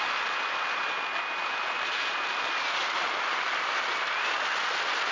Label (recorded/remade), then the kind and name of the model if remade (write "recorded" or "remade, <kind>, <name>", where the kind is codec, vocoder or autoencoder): recorded